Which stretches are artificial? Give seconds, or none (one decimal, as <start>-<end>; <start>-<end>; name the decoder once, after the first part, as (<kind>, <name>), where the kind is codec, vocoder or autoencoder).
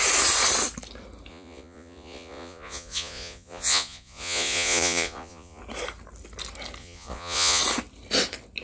1.3-5.6 (vocoder, Vocos); 6.8-7.6